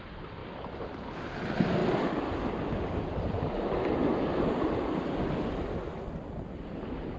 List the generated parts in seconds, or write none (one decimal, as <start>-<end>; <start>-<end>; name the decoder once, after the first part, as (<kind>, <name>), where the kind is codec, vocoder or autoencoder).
none